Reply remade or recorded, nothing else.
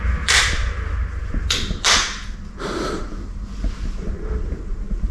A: remade